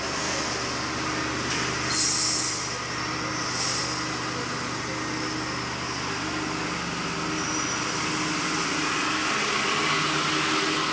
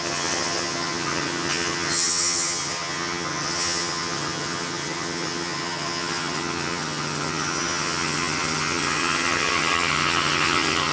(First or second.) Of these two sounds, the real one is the first